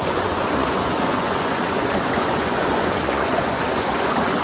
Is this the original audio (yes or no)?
no